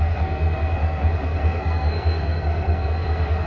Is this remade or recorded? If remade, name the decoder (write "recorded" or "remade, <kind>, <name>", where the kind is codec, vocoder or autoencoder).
remade, codec, SNAC